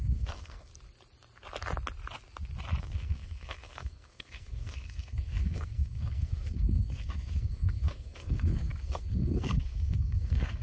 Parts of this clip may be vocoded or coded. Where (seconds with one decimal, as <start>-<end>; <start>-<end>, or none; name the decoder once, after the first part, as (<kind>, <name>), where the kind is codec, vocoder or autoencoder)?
0.0-0.7 (codec, SNAC); 2.8-10.6